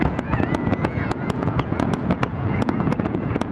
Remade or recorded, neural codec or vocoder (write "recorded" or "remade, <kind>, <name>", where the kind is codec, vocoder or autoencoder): remade, vocoder, Vocos